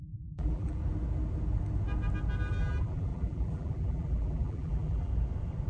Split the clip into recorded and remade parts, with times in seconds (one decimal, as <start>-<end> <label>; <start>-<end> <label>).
0.0-0.8 remade; 0.8-2.6 recorded; 2.6-5.1 remade; 5.1-5.7 recorded